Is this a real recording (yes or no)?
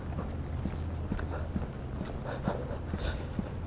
yes